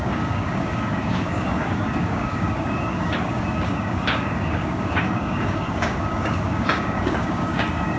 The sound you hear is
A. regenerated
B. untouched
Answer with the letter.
A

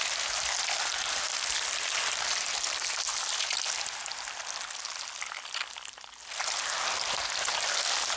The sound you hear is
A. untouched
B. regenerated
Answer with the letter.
A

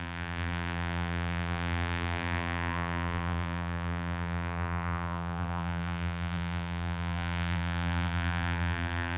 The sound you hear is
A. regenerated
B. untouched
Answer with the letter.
A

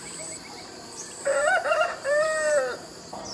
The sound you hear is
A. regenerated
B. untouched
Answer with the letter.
A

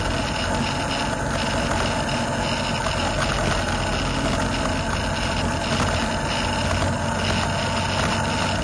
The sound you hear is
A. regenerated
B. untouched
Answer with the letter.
B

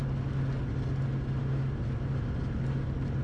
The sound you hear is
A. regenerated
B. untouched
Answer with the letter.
B